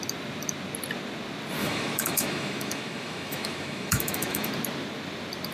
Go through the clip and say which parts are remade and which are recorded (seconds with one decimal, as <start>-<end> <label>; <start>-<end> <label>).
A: 0.0-1.6 recorded; 1.6-4.5 remade; 4.5-5.5 recorded

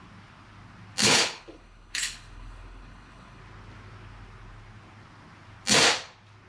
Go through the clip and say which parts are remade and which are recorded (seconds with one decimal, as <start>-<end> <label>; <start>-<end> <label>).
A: 0.0-1.0 recorded; 1.0-3.4 remade; 3.4-6.5 recorded

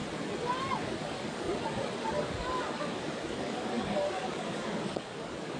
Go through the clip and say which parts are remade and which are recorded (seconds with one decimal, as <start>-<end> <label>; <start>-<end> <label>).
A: 0.0-0.8 recorded; 0.8-5.6 remade

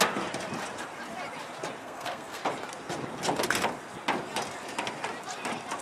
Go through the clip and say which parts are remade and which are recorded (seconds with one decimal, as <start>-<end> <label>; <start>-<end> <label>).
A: 0.0-1.8 recorded; 1.8-2.4 remade; 2.4-5.8 recorded

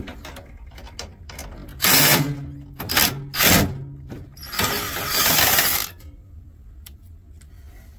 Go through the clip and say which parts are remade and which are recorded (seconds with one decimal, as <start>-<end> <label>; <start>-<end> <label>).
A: 0.0-8.0 recorded

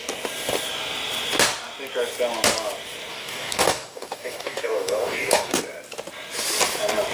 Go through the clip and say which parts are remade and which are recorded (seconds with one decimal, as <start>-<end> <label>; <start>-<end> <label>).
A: 0.0-3.1 recorded; 3.1-5.6 remade; 5.6-7.1 recorded

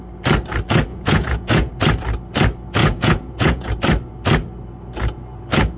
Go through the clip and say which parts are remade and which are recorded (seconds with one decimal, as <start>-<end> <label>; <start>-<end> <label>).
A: 0.0-0.9 recorded; 0.9-1.7 remade; 1.7-2.8 recorded; 2.8-3.7 remade; 3.7-5.8 recorded

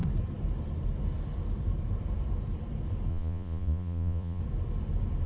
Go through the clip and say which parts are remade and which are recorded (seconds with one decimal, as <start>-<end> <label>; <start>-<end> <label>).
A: 0.0-3.1 recorded; 3.1-4.4 remade; 4.4-5.3 recorded